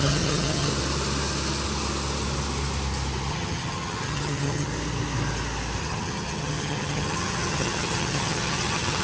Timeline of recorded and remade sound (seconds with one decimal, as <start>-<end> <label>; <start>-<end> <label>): 0.0-0.7 remade; 0.7-3.3 recorded; 3.3-4.7 remade; 4.7-5.8 recorded; 5.8-9.0 remade